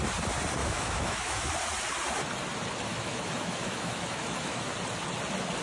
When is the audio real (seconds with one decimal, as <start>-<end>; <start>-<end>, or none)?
0.0-0.6; 1.5-2.9; 4.7-5.6